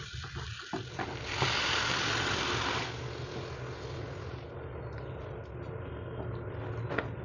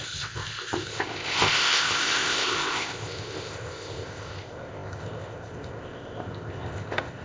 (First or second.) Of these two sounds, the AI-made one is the second